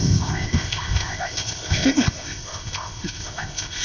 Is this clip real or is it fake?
fake